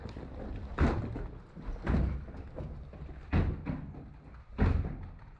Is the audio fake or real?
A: real